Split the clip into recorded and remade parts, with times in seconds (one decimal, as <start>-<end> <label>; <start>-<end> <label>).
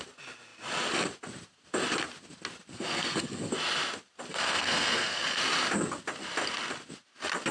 0.0-2.7 recorded; 2.7-3.5 remade; 3.5-4.3 recorded; 4.3-5.4 remade; 5.4-7.5 recorded